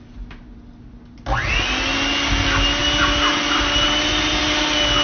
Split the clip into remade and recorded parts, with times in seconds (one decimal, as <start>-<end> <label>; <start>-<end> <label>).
0.0-5.0 recorded